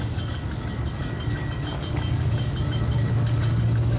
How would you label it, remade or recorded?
remade